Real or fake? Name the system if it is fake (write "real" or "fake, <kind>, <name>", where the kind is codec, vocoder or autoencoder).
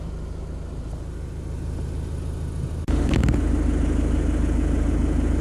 real